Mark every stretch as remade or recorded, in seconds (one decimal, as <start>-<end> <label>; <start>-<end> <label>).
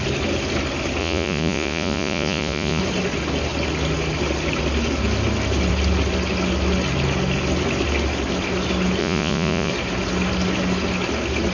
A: 0.0-1.0 recorded; 1.0-2.8 remade; 2.8-9.0 recorded; 9.0-9.7 remade; 9.7-11.5 recorded